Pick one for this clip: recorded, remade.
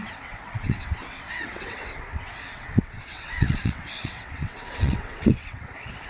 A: remade